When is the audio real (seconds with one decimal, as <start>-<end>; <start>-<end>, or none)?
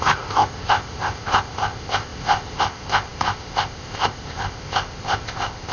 none